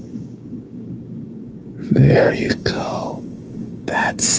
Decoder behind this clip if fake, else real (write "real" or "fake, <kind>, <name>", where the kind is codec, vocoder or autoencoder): fake, codec, DAC